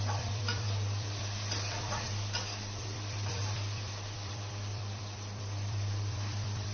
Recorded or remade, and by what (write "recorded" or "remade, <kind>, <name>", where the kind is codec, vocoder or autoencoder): remade, vocoder, BigVGAN v2